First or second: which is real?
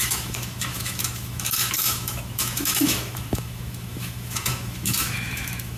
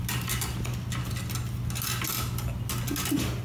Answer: second